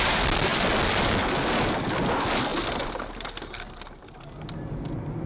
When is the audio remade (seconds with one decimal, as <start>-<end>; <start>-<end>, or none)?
2.5-5.3